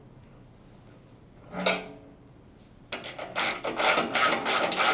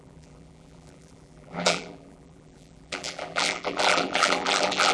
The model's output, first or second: second